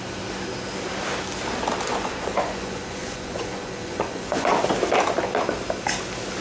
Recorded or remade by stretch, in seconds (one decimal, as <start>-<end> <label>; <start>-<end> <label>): 0.0-1.9 recorded; 1.9-4.6 remade; 4.6-6.4 recorded